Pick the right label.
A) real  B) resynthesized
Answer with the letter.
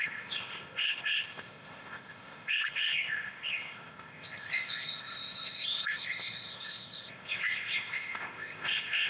B